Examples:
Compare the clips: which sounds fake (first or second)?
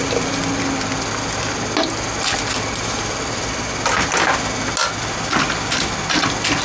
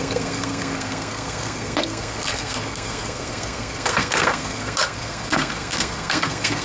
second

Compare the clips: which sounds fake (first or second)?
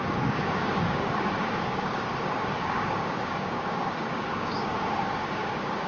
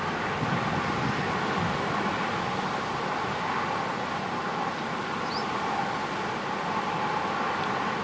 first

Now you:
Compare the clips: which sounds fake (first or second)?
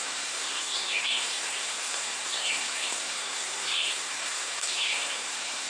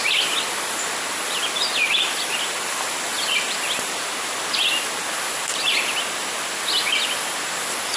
first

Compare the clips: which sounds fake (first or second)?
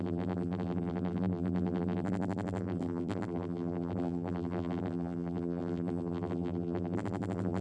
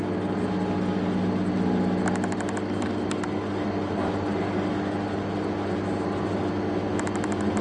first